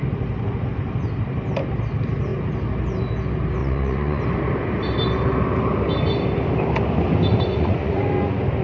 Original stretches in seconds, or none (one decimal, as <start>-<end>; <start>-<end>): 0.0-3.6; 4.2-7.3; 8.1-8.6